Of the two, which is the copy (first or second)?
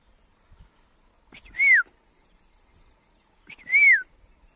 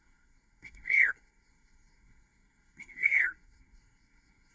second